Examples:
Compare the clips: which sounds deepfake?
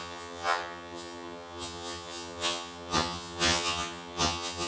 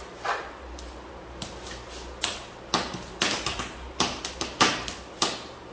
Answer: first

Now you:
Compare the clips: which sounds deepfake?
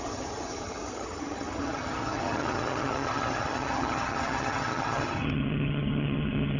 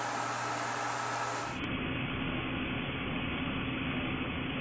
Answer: first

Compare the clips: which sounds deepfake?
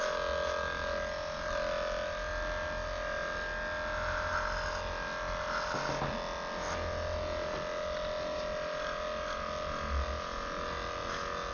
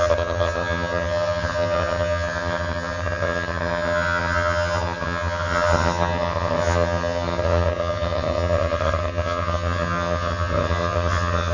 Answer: second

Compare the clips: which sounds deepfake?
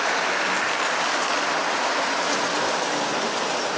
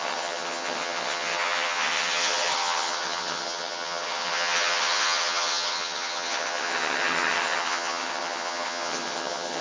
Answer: second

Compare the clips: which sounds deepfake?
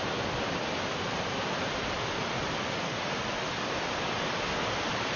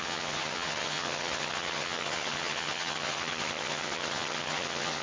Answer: second